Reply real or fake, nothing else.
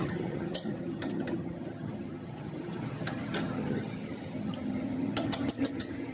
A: fake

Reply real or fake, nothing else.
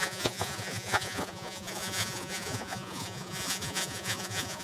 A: fake